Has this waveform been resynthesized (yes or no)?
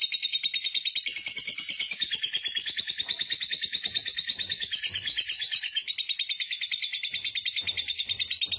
yes